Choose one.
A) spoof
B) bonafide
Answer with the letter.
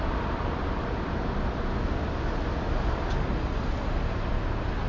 B